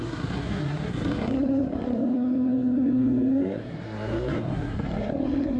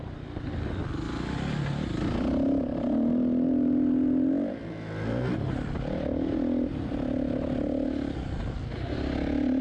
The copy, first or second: first